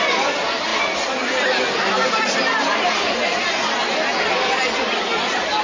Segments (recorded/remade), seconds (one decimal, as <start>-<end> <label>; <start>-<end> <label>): 0.0-5.6 recorded